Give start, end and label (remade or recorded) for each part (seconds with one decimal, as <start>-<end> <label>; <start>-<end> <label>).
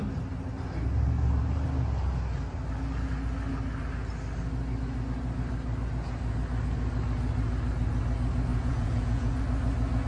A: 0.0-8.5 recorded; 8.5-9.4 remade; 9.4-10.1 recorded